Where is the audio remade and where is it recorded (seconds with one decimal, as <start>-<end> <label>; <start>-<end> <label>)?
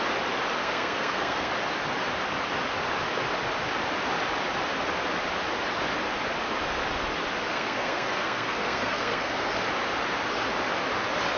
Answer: 0.0-0.6 recorded; 0.6-1.5 remade; 1.5-7.5 recorded; 7.5-9.5 remade; 9.5-11.4 recorded